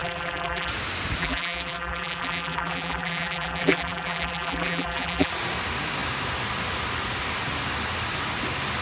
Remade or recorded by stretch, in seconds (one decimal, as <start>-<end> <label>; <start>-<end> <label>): 0.0-0.7 remade; 0.7-1.2 recorded; 1.2-5.3 remade; 5.3-8.8 recorded